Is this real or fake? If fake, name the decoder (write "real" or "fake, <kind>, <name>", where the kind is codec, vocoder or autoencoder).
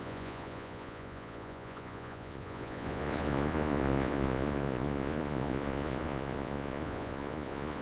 fake, vocoder, Vocos